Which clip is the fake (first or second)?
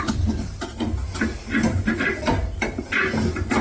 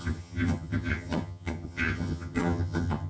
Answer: second